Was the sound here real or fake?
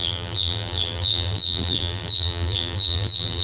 fake